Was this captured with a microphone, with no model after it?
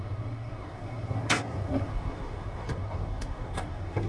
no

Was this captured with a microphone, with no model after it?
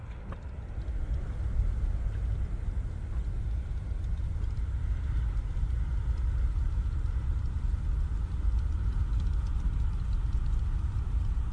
yes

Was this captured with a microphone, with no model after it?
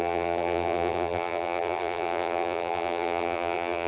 no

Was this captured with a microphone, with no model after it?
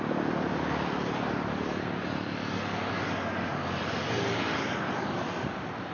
yes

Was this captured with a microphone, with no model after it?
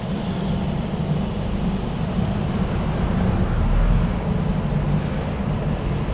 yes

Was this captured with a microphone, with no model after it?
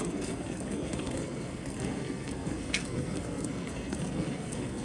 no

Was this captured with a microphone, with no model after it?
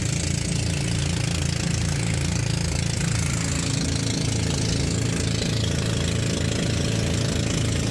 yes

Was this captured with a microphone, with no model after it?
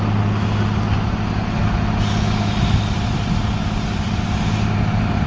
yes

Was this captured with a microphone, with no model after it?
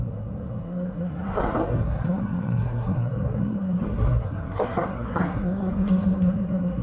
no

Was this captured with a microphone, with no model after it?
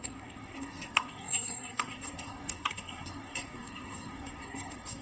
no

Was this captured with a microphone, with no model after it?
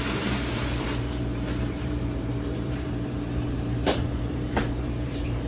no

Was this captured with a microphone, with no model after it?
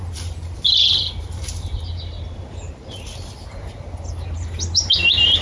yes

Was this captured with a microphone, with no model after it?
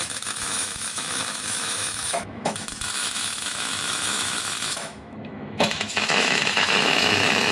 no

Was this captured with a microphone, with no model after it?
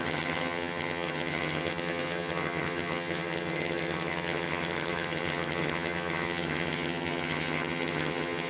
no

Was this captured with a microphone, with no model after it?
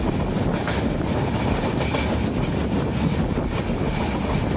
yes